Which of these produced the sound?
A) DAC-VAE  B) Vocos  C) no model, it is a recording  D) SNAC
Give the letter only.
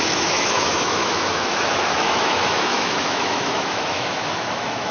A